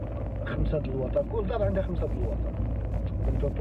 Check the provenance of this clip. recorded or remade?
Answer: recorded